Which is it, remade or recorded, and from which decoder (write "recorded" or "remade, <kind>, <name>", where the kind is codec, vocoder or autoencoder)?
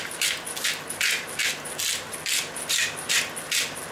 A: recorded